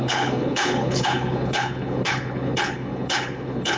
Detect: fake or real fake